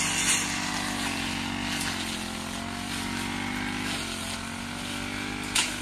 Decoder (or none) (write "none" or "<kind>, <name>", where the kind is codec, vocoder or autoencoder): none